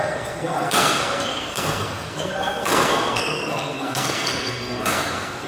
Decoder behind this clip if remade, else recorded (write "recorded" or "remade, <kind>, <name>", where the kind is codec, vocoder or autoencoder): remade, codec, SNAC